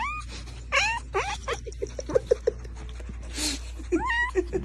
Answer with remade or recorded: recorded